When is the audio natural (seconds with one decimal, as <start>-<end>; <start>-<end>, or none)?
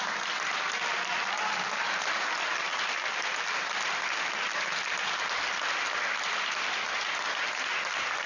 0.0-8.3